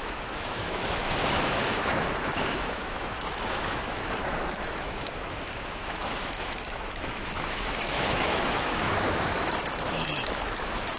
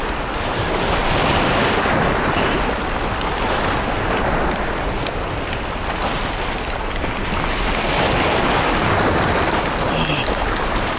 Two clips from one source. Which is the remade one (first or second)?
first